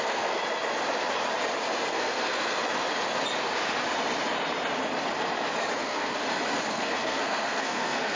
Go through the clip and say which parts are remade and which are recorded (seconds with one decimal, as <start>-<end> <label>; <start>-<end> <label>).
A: 0.0-0.4 remade; 0.4-1.9 recorded; 1.9-2.6 remade; 2.6-5.8 recorded; 5.8-6.2 remade; 6.2-6.7 recorded; 6.7-8.2 remade